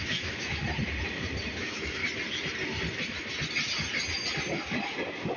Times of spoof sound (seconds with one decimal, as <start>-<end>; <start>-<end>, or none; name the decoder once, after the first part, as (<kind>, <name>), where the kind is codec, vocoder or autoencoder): 0.0-0.6 (autoencoder, DAC-VAE); 1.6-2.0